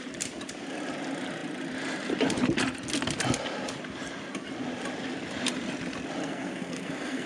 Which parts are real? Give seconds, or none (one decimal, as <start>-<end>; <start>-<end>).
0.0-6.2

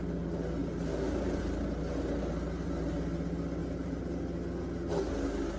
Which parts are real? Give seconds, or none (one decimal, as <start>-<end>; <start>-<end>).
0.0-0.6; 1.4-3.6; 4.1-5.6